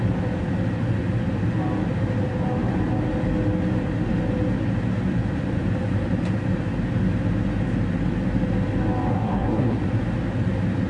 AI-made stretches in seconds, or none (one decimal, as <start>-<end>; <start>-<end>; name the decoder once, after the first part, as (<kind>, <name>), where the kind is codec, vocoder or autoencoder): 9.1-9.8 (codec, SNAC)